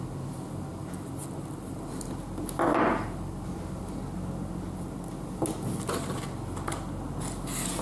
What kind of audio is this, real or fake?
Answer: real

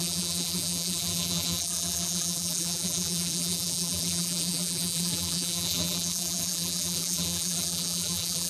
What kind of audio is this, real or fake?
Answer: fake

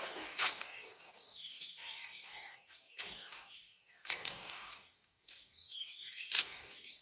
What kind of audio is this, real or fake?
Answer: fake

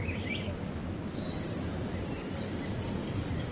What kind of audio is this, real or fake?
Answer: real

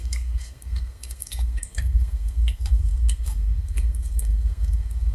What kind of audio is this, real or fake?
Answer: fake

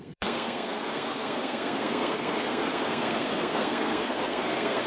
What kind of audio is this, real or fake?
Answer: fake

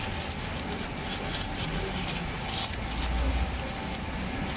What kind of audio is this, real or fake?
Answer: real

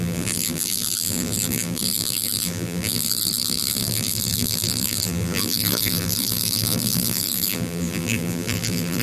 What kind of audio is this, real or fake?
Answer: fake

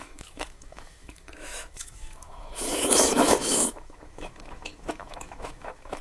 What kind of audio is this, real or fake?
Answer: fake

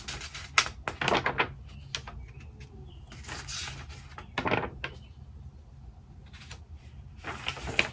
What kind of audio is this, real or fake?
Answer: real